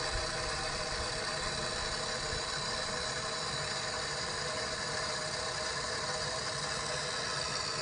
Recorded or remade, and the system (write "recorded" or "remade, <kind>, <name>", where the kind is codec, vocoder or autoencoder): recorded